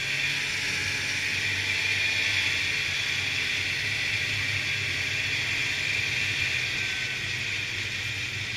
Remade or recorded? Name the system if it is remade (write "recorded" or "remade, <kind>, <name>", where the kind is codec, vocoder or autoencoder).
recorded